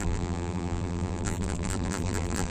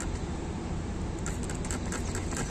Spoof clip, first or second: first